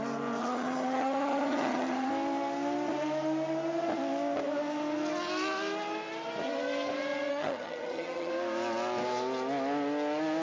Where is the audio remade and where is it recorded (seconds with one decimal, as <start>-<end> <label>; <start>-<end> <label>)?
0.0-0.4 recorded; 0.4-2.1 remade; 2.1-7.3 recorded; 7.3-8.3 remade; 8.3-10.4 recorded